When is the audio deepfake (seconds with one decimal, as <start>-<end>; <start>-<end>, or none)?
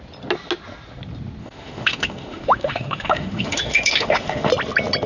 1.4-4.5